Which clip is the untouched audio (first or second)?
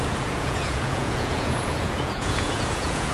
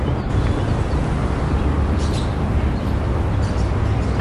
second